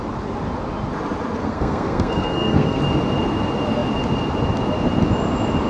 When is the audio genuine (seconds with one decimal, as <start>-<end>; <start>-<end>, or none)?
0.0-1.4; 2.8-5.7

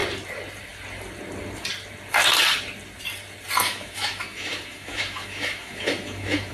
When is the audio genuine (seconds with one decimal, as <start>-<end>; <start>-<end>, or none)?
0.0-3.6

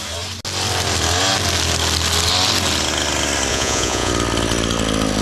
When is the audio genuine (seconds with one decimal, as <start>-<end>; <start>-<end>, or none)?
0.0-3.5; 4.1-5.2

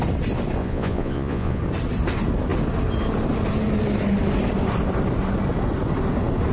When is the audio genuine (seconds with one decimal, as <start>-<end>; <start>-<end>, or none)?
0.0-0.6; 1.6-6.5

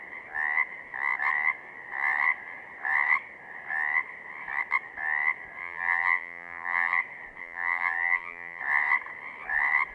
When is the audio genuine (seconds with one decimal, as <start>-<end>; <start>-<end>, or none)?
0.0-5.6; 7.0-7.4; 8.6-9.9

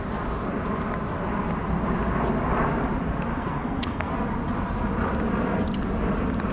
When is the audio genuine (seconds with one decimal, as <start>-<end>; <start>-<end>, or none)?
0.0-3.3; 4.1-6.5

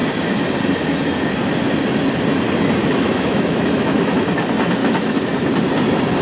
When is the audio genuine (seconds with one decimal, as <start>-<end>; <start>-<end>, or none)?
0.0-2.8; 4.2-4.8; 5.3-6.2

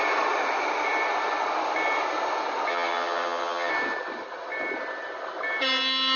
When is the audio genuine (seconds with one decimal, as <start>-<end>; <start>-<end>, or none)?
0.0-2.7; 3.7-6.2